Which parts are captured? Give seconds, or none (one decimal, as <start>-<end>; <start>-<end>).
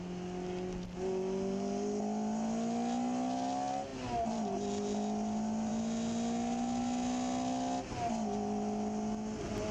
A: 0.0-9.7